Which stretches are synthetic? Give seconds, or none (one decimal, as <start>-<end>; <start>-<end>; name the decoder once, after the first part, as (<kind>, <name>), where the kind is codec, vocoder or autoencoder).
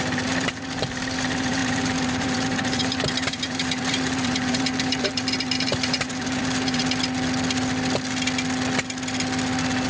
0.0-6.8 (vocoder, BigVGAN v2)